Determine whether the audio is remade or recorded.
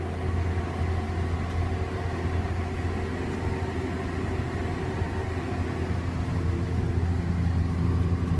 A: recorded